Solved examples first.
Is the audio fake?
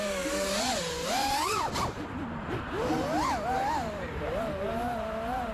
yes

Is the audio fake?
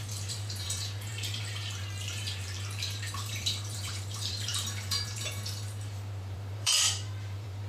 yes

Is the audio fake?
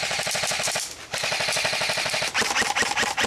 no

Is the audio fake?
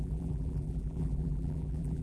yes